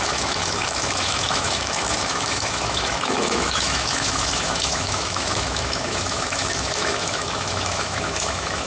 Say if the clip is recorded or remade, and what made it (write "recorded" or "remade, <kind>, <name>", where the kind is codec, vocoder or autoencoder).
remade, autoencoder, DAC-VAE